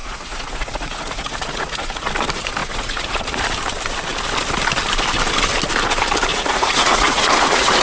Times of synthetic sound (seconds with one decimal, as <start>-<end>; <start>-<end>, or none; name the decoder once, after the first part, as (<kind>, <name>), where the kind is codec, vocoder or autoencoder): 0.0-2.1 (vocoder, Vocos); 2.6-3.4; 6.3-7.8